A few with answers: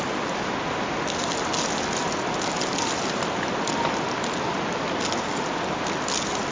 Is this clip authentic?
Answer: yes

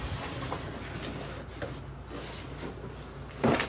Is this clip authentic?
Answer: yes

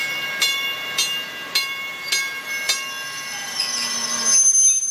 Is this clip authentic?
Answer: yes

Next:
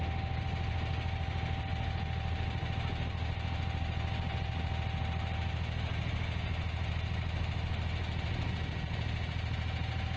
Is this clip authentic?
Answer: yes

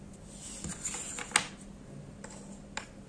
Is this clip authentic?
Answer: yes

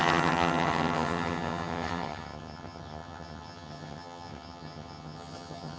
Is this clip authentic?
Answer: no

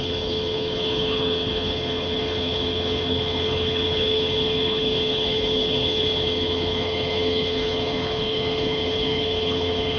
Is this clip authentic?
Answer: no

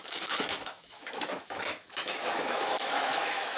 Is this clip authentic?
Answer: no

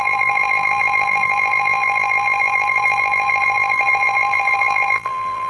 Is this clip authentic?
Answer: no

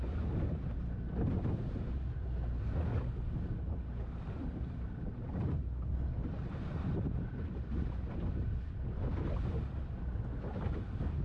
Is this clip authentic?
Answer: yes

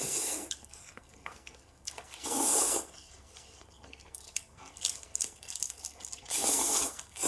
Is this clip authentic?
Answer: no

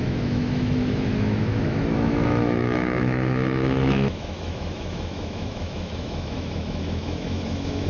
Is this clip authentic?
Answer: no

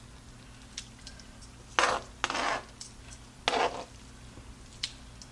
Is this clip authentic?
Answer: yes